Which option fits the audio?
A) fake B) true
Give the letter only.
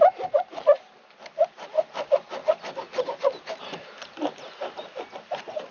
B